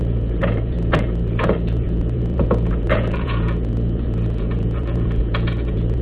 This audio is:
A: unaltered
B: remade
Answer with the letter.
B